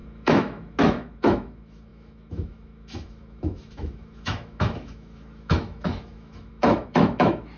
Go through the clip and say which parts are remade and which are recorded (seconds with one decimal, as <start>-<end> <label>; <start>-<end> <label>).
0.0-7.6 remade

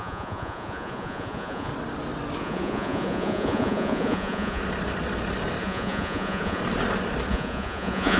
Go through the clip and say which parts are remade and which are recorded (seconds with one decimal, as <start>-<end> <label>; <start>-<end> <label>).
0.0-1.7 remade; 1.7-2.4 recorded; 2.4-4.6 remade; 4.6-5.6 recorded; 5.6-6.6 remade; 6.6-7.3 recorded; 7.3-8.2 remade

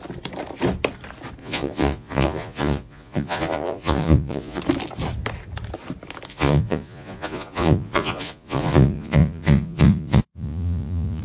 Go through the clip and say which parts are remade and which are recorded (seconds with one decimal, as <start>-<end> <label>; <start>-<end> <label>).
0.0-1.4 recorded; 1.4-4.6 remade; 4.6-6.3 recorded; 6.3-11.2 remade

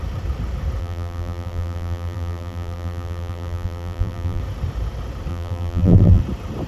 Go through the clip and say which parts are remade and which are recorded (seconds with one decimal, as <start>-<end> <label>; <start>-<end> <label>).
0.0-0.8 recorded; 0.8-4.4 remade; 4.4-5.3 recorded; 5.3-6.2 remade; 6.2-6.7 recorded